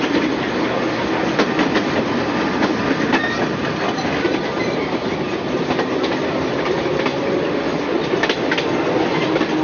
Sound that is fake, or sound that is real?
real